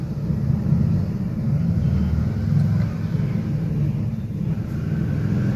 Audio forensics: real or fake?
real